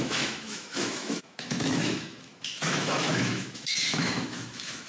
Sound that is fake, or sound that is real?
fake